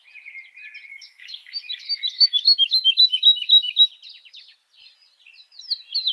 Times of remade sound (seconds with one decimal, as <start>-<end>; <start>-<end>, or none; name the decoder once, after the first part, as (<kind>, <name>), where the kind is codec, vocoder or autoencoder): 0.9-3.9 (autoencoder, DAC-VAE)